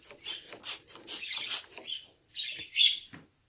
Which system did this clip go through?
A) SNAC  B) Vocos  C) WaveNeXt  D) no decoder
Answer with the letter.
D